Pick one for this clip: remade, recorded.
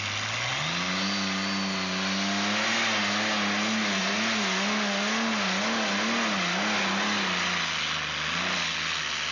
recorded